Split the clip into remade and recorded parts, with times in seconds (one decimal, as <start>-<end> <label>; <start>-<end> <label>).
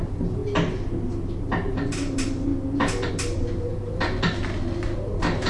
0.0-5.5 recorded